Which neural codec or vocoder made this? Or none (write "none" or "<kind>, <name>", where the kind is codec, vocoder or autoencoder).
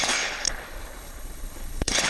codec, HILCodec